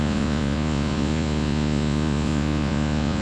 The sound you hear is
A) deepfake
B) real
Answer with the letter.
A